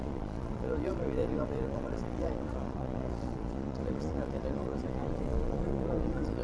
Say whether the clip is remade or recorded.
remade